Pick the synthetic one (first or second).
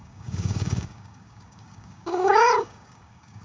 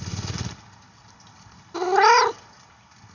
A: first